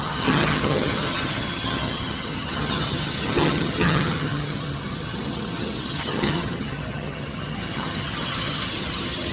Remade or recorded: remade